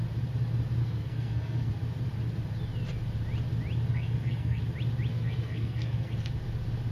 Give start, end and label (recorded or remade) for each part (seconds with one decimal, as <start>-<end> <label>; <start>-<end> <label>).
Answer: 0.0-0.8 recorded; 0.8-1.7 remade; 1.7-3.9 recorded; 3.9-4.6 remade; 4.6-5.1 recorded; 5.1-6.3 remade; 6.3-6.9 recorded